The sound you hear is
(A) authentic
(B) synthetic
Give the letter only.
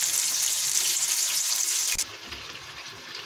A